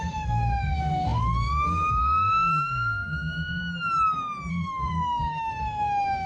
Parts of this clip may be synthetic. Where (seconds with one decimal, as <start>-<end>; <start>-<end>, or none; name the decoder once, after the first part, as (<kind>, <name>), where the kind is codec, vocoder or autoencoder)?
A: 0.0-3.6 (autoencoder, DAC-VAE); 4.5-6.3